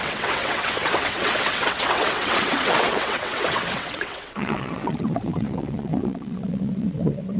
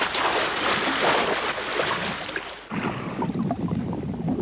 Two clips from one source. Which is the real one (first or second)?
second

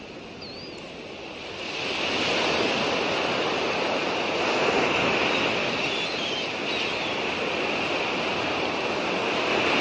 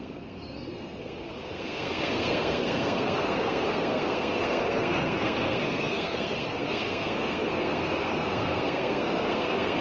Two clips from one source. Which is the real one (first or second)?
first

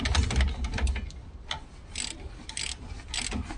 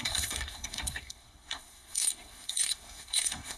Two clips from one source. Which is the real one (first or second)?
first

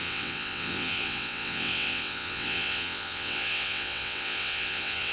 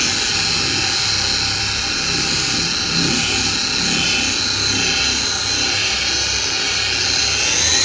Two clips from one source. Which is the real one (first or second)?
second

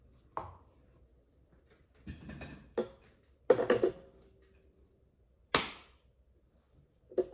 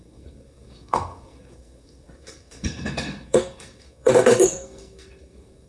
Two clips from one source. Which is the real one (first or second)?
first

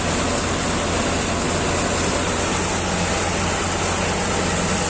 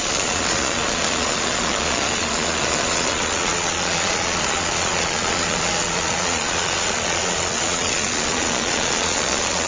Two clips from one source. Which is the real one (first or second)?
first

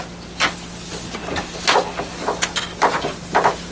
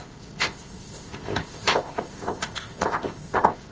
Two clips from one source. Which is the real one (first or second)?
first